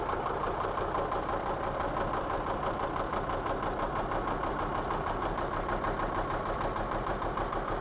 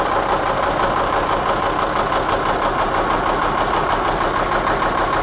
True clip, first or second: second